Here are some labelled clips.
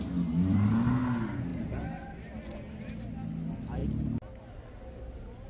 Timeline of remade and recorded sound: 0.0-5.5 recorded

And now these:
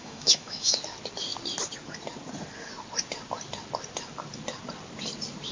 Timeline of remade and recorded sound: 0.0-0.7 remade; 0.7-5.5 recorded

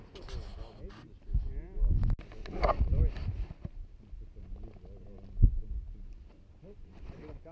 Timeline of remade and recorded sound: 0.0-7.5 recorded

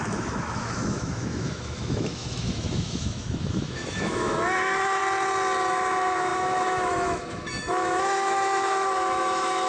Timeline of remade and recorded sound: 0.0-5.0 remade; 5.0-5.7 recorded; 5.7-9.7 remade

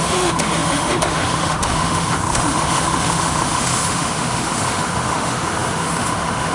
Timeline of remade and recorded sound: 0.0-6.5 remade

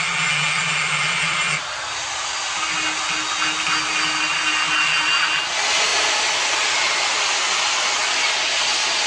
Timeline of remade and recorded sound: 0.0-9.1 recorded

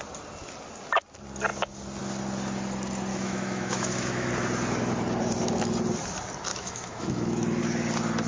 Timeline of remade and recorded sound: 0.0-3.1 recorded; 3.1-4.3 remade; 4.3-6.5 recorded; 6.5-7.6 remade; 7.6-8.3 recorded